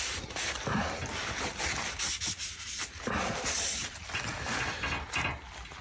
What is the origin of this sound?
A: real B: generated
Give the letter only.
A